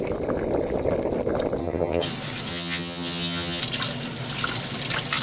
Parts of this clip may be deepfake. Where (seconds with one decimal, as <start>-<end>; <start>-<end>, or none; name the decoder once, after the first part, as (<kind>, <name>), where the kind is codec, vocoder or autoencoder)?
1.6-2.1 (vocoder, HiFi-GAN); 2.5-3.6